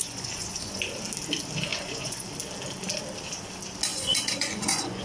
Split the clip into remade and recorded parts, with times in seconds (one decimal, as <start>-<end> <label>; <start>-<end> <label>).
0.0-0.9 remade; 0.9-1.7 recorded; 1.7-2.3 remade; 2.3-3.9 recorded; 3.9-5.0 remade